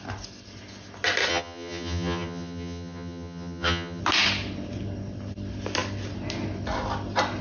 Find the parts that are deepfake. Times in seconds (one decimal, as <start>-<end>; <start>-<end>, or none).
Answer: 1.3-4.0